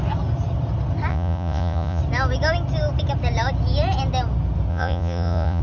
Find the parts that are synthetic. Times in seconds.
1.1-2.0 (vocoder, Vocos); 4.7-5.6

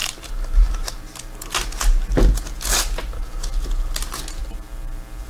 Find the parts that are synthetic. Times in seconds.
none

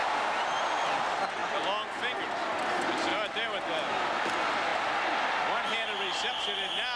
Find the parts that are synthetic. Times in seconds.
none

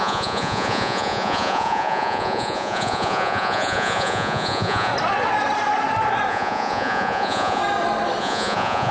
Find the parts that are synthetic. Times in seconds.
0.0-4.9 (vocoder, Vocos); 6.3-7.6; 8.2-8.9

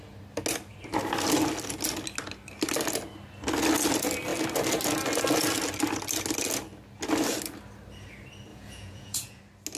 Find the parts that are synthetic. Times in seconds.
8.5-9.4 (vocoder, Vocos)